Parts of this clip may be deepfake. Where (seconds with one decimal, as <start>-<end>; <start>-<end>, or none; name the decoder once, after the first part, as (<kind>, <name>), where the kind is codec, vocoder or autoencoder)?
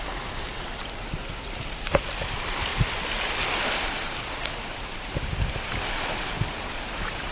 none